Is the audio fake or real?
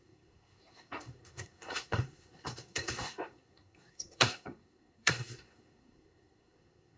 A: fake